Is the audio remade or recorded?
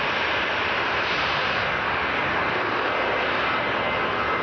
recorded